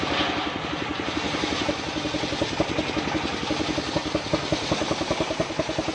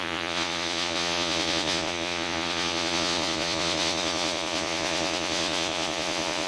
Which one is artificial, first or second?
second